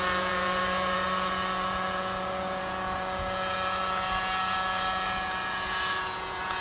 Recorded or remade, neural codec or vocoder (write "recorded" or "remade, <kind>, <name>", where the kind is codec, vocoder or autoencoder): remade, vocoder, Vocos